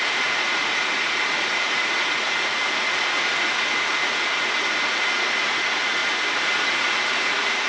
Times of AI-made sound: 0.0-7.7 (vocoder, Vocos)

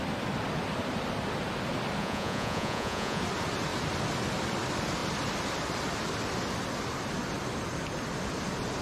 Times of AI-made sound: 2.0-3.2 (vocoder, Vocos)